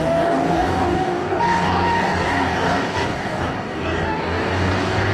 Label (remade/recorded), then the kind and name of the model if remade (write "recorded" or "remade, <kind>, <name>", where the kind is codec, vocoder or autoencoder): remade, codec, DAC